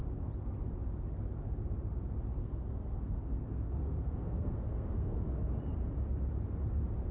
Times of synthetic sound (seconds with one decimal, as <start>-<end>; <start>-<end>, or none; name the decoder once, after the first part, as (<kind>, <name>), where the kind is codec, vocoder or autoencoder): 2.4-5.4 (codec, SNAC)

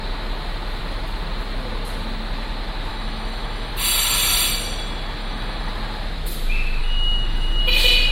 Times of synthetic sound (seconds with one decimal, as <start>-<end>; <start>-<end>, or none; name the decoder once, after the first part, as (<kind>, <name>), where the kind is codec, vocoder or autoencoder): 2.9-3.7 (autoencoder, DAC-VAE); 5.2-5.7; 6.8-7.6

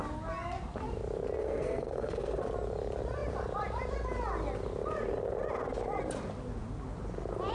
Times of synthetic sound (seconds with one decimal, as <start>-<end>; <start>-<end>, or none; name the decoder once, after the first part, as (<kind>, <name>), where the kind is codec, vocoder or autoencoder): 1.4-2.4 (codec, SNAC)

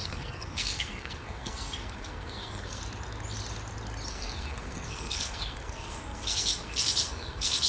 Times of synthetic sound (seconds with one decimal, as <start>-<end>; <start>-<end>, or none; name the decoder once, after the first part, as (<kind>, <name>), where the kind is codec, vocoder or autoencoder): 0.0-2.8 (codec, SNAC); 4.1-7.7

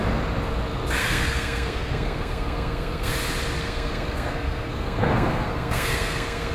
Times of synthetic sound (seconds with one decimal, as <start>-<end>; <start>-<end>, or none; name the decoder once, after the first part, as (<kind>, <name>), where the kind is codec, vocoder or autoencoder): 1.0-3.1 (codec, SNAC); 3.6-6.5

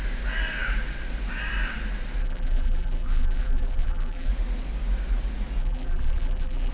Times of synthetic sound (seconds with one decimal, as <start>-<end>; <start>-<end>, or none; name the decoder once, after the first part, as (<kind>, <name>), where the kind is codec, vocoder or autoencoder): 2.2-4.3 (vocoder, BigVGAN v2); 5.6-6.7

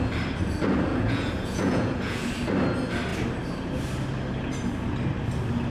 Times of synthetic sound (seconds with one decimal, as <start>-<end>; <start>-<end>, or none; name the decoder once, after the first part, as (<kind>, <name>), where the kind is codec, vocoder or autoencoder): 0.9-2.3 (vocoder, Vocos)